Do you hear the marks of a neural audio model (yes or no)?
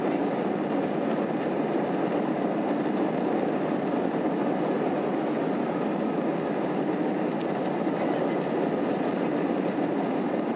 no